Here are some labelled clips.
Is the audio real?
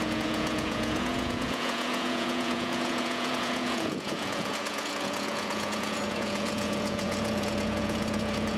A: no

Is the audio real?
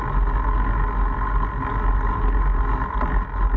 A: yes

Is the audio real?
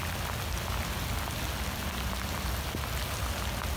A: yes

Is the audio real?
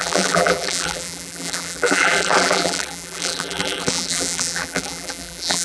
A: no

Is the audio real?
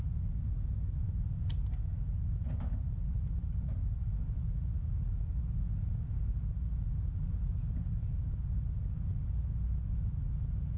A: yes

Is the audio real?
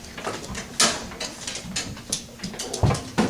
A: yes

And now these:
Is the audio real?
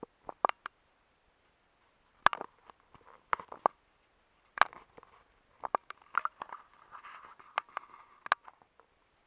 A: yes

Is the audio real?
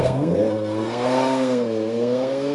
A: no